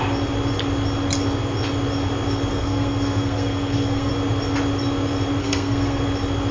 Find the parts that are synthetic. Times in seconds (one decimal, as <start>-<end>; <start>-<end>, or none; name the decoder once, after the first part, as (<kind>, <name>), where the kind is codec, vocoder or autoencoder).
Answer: 2.5-4.1 (codec, SNAC); 5.4-6.0